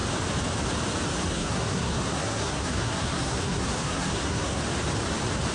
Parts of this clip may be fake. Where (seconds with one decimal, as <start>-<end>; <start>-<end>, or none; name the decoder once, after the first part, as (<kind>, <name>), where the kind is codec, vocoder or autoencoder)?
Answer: 1.3-4.6 (codec, SNAC)